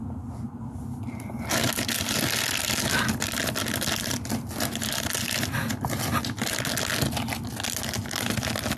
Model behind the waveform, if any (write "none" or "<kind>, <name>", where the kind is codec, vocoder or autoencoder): none